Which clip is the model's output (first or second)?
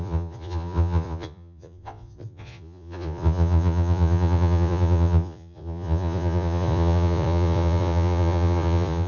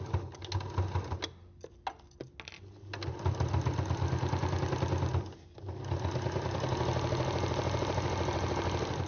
first